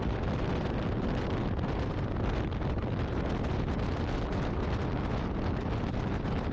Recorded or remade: recorded